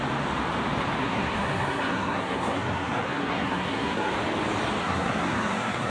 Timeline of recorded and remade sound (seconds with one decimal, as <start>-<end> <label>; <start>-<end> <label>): 0.0-1.0 recorded; 1.0-4.1 remade; 4.1-4.8 recorded; 4.8-5.9 remade